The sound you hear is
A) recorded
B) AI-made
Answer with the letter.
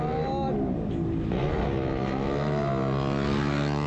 A